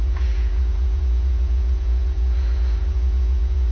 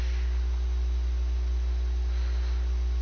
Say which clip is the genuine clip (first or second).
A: second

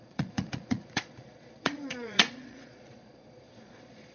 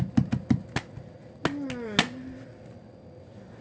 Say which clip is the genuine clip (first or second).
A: second